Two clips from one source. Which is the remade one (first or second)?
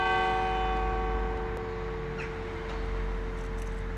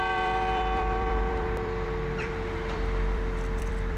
second